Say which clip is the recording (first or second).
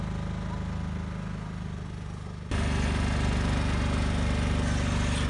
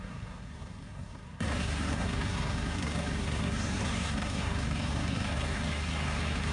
first